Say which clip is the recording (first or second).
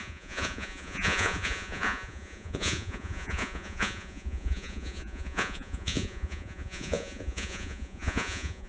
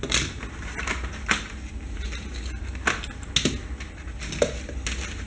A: second